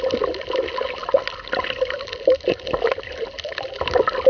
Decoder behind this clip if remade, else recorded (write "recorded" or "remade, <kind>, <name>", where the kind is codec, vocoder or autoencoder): recorded